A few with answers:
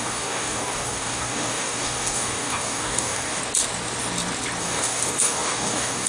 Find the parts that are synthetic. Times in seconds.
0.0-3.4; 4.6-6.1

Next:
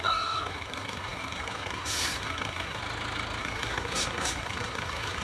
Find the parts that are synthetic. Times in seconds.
0.0-2.8; 3.4-5.2

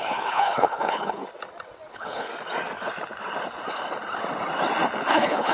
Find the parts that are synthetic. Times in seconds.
0.0-1.2; 1.9-2.3; 5.1-5.5

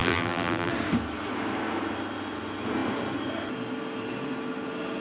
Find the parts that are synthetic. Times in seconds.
0.0-0.7